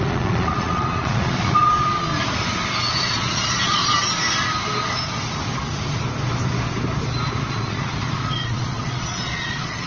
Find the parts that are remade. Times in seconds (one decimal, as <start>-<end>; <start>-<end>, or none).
0.0-2.1; 3.0-3.8; 7.5-9.9